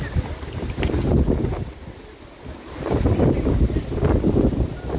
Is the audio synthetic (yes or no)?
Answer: no